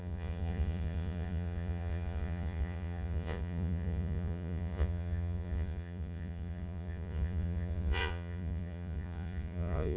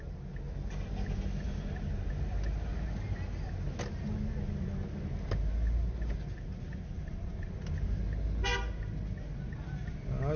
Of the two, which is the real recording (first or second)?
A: second